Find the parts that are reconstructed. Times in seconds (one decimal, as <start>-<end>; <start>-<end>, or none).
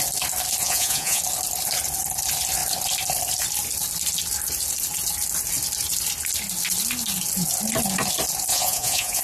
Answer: 0.6-1.2; 8.5-9.2